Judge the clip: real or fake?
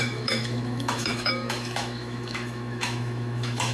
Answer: fake